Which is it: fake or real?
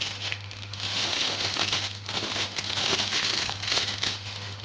fake